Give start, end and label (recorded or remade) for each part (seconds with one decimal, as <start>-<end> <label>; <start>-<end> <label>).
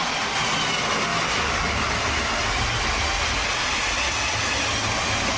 0.0-5.4 recorded